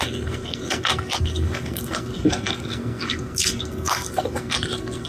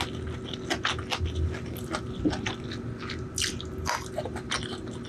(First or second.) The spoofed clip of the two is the first